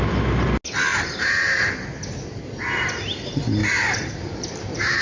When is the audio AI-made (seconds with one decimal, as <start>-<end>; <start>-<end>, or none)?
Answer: 0.9-1.6; 3.6-5.0